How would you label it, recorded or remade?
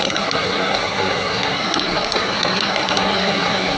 remade